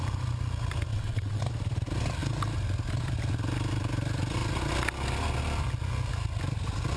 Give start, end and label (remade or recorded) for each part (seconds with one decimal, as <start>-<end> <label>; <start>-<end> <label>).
0.0-0.9 recorded; 0.9-1.4 remade; 1.4-7.0 recorded